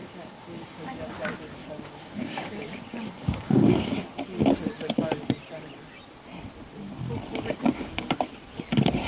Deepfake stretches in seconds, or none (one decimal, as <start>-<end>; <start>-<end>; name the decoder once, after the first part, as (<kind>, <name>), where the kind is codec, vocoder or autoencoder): 0.0-1.1 (codec, DAC); 1.6-4.0